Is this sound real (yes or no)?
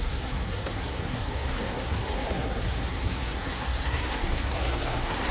no